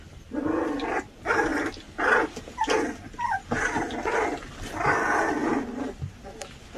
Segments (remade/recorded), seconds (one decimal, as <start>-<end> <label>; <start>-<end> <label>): 0.0-6.8 recorded

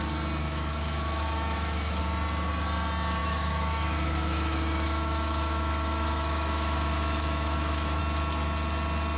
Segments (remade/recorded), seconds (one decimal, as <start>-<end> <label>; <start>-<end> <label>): 0.0-0.4 recorded; 0.4-2.0 remade; 2.0-3.2 recorded; 3.2-8.0 remade; 8.0-9.2 recorded

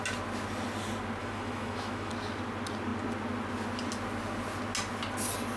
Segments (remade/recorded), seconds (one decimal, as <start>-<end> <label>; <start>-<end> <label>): 0.0-1.2 recorded; 1.2-2.1 remade; 2.1-5.6 recorded

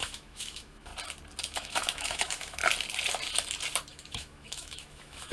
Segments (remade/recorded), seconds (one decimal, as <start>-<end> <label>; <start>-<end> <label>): 0.0-0.9 remade; 0.9-1.4 recorded; 1.4-2.6 remade; 2.6-3.9 recorded; 3.9-5.3 remade

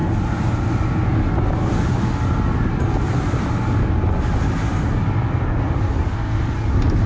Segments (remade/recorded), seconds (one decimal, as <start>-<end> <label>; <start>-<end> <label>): 0.0-7.1 recorded